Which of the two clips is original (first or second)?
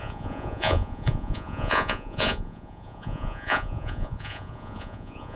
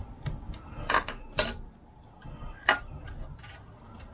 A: second